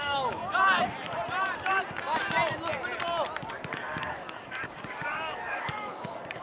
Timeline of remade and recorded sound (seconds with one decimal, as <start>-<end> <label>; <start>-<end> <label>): 0.0-0.4 remade; 0.4-3.5 recorded; 3.5-6.4 remade